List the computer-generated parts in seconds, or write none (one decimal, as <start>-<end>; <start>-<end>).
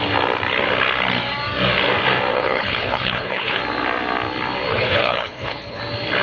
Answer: 2.3-3.6; 4.7-5.8